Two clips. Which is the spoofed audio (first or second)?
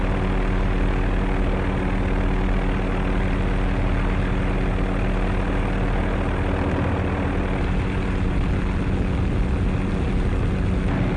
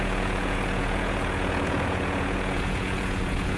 second